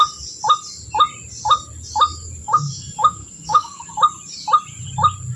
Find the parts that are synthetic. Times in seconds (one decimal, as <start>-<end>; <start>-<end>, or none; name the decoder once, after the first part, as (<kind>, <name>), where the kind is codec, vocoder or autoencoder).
2.4-3.9 (codec, DAC)